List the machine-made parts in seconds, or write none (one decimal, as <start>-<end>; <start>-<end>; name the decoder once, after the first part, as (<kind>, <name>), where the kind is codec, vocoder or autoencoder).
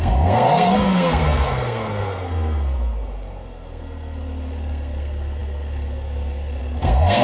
0.0-7.2 (codec, SNAC)